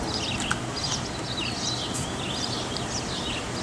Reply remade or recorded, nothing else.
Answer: recorded